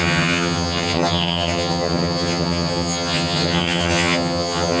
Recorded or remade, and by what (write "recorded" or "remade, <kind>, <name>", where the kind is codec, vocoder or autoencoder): remade, vocoder, HiFi-GAN